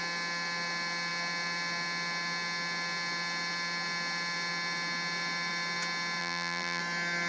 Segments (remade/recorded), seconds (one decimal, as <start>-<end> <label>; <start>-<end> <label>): 0.0-6.2 recorded; 6.2-6.8 remade; 6.8-7.3 recorded